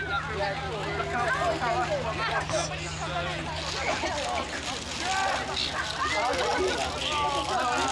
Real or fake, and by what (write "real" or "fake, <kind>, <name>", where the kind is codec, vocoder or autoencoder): real